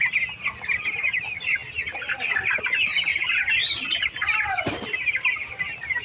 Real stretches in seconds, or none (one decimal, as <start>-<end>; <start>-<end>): 0.0-6.0